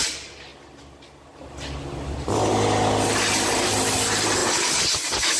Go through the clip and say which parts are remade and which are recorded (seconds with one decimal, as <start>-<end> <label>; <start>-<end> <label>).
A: 0.0-5.4 recorded